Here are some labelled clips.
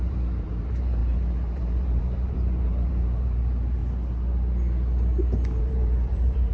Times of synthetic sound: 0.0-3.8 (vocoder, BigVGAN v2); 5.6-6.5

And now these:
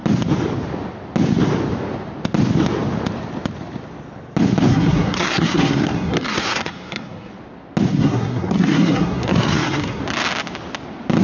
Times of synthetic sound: 4.7-7.3 (codec, SNAC); 7.9-10.0

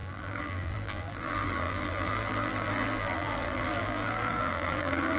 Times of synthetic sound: 0.0-5.2 (vocoder, BigVGAN v2)

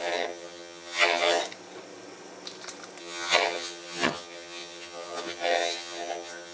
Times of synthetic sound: 0.0-1.4 (vocoder, HiFi-GAN); 3.0-6.5